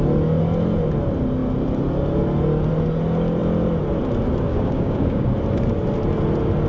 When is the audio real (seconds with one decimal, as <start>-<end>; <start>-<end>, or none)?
0.0-4.5; 5.3-6.7